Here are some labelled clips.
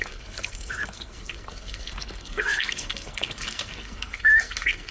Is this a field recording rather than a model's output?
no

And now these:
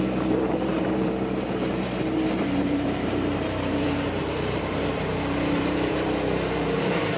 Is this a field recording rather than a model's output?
no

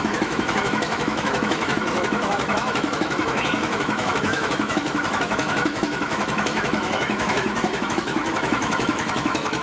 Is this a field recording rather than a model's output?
no